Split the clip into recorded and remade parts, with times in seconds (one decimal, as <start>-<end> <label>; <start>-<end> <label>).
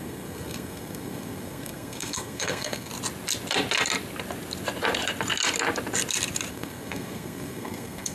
0.0-2.9 remade; 2.9-6.5 recorded; 6.5-8.1 remade